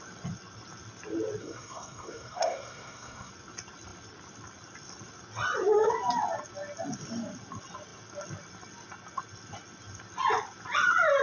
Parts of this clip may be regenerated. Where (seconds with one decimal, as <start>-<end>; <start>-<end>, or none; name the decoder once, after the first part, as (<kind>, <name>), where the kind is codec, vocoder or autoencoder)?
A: 1.4-3.3 (codec, SNAC)